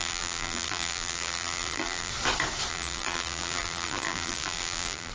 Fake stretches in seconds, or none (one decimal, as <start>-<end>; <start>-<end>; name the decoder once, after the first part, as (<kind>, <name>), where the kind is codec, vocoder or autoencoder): 0.0-2.1 (vocoder, BigVGAN v2); 2.7-5.1